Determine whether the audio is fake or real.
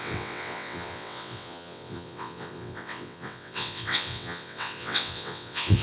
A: fake